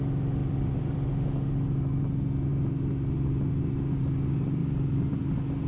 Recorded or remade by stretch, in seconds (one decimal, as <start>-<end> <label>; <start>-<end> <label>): 0.0-0.4 recorded; 0.4-1.1 remade; 1.1-4.6 recorded; 4.6-5.2 remade; 5.2-5.7 recorded